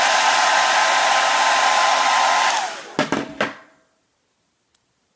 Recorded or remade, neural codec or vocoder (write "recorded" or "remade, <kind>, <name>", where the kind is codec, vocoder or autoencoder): recorded